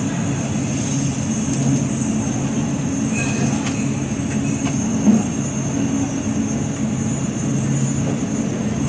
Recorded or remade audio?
recorded